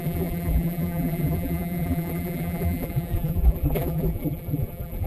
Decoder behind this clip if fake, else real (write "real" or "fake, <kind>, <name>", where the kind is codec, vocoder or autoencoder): fake, vocoder, BigVGAN v2